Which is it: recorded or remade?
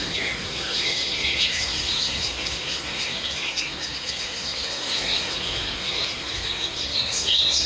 remade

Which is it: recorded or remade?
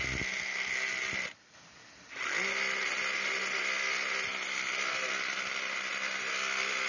recorded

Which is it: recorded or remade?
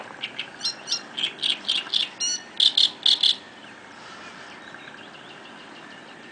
recorded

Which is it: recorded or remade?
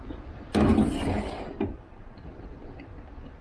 recorded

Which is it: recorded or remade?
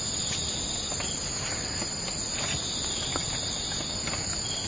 recorded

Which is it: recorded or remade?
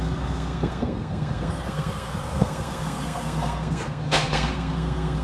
remade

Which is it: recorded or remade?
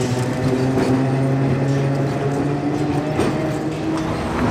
recorded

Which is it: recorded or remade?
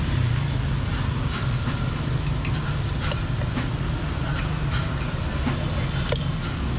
recorded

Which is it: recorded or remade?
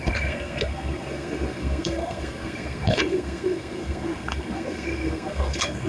remade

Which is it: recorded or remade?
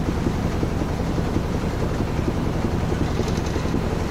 recorded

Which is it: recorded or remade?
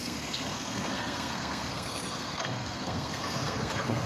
remade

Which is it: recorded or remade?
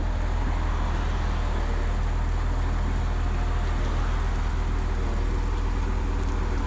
recorded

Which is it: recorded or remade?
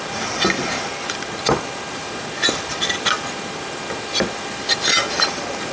recorded